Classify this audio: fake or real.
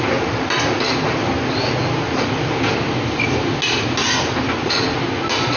real